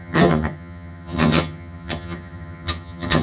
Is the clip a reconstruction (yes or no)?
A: yes